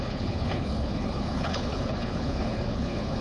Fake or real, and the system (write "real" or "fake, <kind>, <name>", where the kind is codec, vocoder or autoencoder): fake, codec, HILCodec